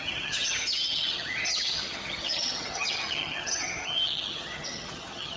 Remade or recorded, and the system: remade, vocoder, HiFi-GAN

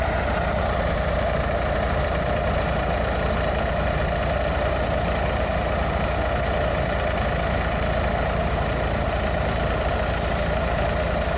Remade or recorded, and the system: recorded